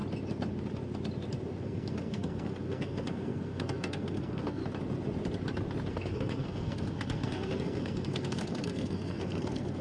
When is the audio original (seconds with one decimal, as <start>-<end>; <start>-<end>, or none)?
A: 0.0-1.6; 4.6-5.9